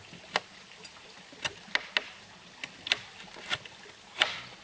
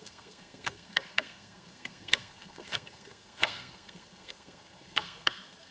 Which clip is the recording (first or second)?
first